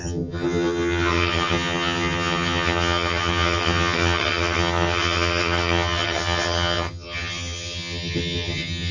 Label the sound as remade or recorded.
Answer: remade